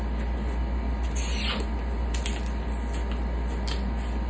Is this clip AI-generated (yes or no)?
no